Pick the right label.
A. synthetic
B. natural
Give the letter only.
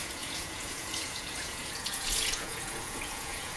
A